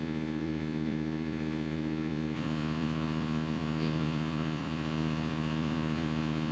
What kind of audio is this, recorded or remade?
remade